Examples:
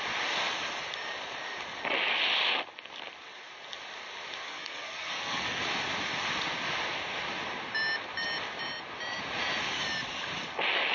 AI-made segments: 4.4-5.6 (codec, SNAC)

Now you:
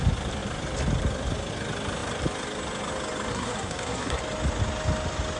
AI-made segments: 3.3-4.2 (codec, SNAC)